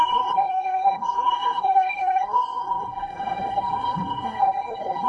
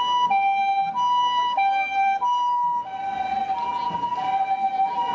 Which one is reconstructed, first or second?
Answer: first